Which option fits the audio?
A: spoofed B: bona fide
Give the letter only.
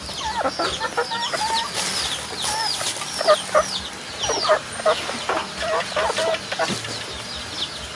B